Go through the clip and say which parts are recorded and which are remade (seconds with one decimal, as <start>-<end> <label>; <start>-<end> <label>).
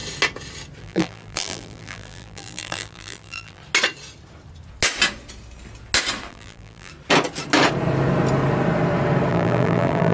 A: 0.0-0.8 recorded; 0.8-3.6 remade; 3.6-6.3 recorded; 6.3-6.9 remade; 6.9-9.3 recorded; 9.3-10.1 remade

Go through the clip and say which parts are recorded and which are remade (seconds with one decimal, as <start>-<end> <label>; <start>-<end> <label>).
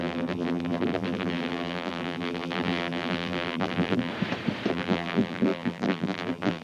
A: 0.0-4.1 remade; 4.1-4.7 recorded; 4.7-6.6 remade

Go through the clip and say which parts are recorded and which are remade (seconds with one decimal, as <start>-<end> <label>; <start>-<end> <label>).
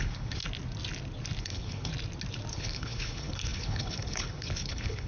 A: 0.0-0.4 remade; 0.4-1.4 recorded; 1.4-1.9 remade; 1.9-2.5 recorded; 2.5-5.1 remade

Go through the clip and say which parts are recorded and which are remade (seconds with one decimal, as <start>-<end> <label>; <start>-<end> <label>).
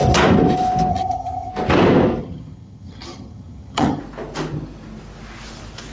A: 0.0-0.9 recorded; 0.9-1.5 remade; 1.5-2.2 recorded; 2.2-4.0 remade; 4.0-5.9 recorded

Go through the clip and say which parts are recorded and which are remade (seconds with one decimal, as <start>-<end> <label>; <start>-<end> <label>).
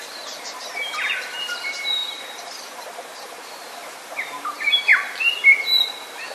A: 0.0-4.9 remade; 4.9-5.6 recorded; 5.6-6.3 remade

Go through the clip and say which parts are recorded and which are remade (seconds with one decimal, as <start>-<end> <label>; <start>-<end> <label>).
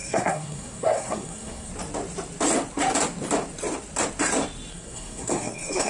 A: 0.0-1.7 remade; 1.7-4.7 recorded; 4.7-5.9 remade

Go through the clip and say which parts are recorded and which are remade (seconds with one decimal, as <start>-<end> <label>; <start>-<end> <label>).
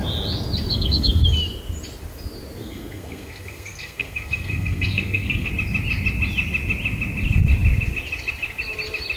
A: 0.0-0.7 recorded; 0.7-1.2 remade; 1.2-2.6 recorded; 2.6-5.5 remade; 5.5-9.2 recorded